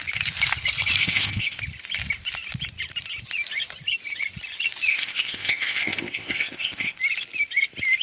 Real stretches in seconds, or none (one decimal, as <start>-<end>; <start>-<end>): 0.0-1.0; 1.6-4.9; 7.0-8.0

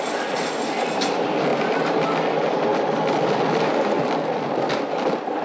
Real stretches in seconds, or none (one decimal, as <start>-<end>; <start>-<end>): 0.0-5.4